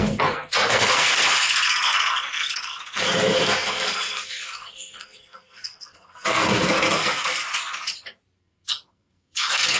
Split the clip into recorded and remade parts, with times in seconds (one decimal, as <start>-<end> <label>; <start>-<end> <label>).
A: 0.0-7.3 remade; 7.3-8.4 recorded; 8.4-9.8 remade

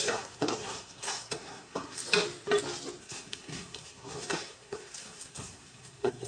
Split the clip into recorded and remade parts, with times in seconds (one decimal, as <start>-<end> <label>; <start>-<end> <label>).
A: 0.0-2.0 remade; 2.0-3.0 recorded; 3.0-6.3 remade

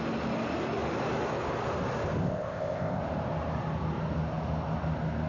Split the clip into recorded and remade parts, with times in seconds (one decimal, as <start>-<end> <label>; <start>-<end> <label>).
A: 0.0-2.2 recorded; 2.2-3.0 remade; 3.0-5.3 recorded

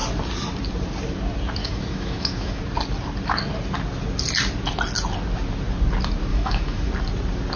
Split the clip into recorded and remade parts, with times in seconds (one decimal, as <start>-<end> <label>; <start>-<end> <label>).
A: 0.0-1.6 recorded; 1.6-2.6 remade; 2.6-6.3 recorded; 6.3-6.9 remade; 6.9-7.6 recorded

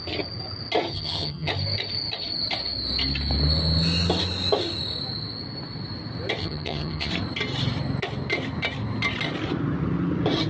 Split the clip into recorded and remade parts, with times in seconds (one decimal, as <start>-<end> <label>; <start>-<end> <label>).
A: 0.0-0.9 recorded; 0.9-1.5 remade; 1.5-6.4 recorded; 6.4-7.1 remade; 7.1-10.5 recorded

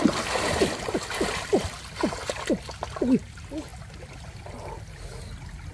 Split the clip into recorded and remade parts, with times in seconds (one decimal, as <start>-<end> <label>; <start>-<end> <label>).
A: 0.0-5.7 recorded

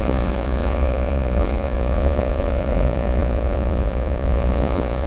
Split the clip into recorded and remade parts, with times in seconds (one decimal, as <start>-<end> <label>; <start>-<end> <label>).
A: 0.0-5.1 remade